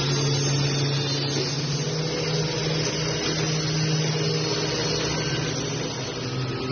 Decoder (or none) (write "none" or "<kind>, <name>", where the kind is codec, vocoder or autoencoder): none